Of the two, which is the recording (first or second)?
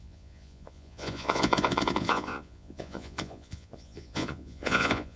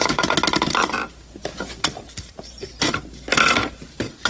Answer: second